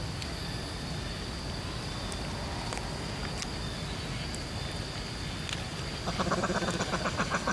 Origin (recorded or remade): recorded